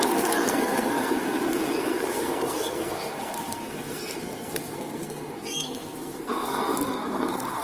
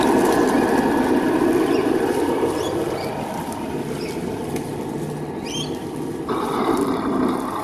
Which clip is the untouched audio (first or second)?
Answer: second